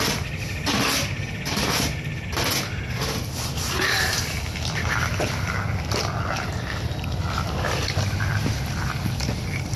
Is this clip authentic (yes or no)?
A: yes